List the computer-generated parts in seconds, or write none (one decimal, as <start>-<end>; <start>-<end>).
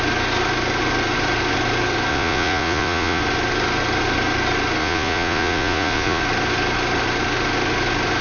2.1-3.2; 4.8-6.2